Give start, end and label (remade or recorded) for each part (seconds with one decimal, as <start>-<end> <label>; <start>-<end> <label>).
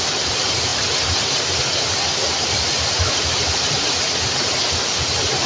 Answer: 0.0-5.5 recorded